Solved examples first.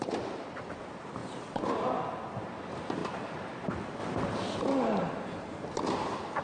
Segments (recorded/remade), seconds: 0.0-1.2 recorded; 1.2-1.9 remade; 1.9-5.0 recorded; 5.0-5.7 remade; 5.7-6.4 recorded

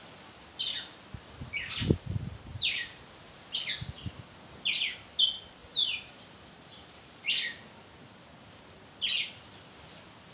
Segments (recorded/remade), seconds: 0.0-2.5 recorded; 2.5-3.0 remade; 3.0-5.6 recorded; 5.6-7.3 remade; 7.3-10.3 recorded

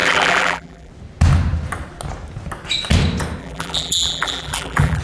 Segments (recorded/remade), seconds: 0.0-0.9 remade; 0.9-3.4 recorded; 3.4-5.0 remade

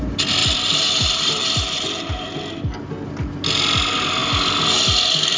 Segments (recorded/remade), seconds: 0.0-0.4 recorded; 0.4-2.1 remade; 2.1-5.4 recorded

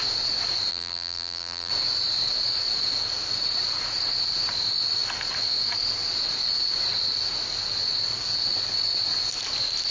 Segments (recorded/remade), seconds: 0.0-0.7 recorded; 0.7-1.7 remade; 1.7-9.9 recorded